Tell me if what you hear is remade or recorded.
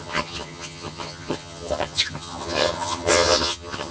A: remade